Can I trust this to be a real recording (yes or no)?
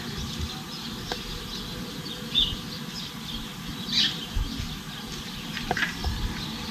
yes